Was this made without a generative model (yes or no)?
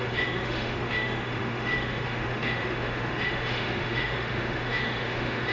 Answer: no